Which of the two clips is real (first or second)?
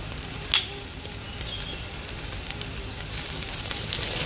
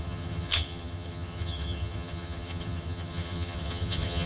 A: first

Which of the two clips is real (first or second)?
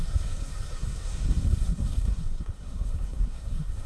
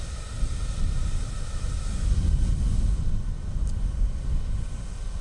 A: second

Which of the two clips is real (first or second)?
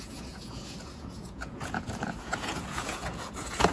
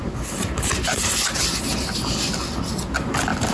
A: second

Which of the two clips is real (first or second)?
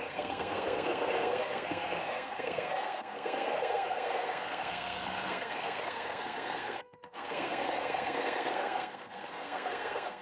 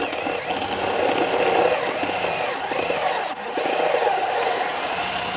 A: second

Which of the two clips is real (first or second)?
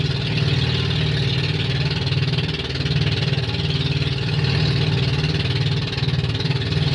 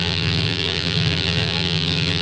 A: first